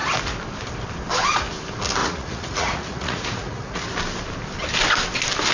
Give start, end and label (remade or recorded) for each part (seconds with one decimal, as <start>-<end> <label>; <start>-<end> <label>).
0.0-2.0 recorded; 2.0-3.8 remade; 3.8-5.5 recorded